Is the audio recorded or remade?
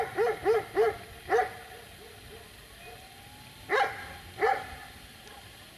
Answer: recorded